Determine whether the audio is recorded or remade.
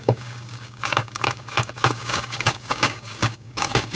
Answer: remade